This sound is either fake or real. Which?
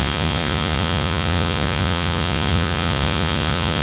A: fake